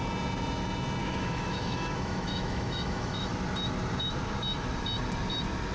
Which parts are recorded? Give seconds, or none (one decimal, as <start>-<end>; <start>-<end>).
0.0-1.0; 3.3-5.7